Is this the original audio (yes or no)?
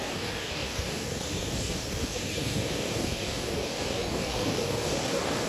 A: no